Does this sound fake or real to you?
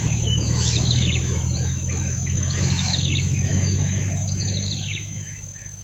fake